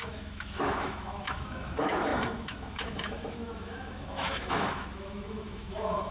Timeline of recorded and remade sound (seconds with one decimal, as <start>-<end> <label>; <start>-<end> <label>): 0.0-6.1 remade